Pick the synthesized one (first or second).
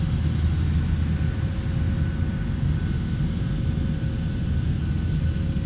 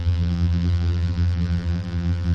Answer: second